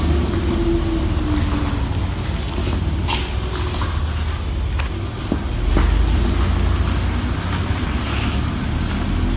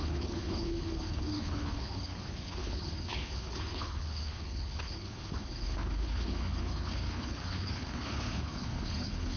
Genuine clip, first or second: first